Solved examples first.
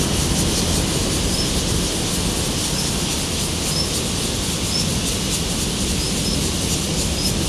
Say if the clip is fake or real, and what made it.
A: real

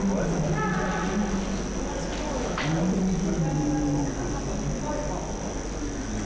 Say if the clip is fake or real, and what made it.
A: real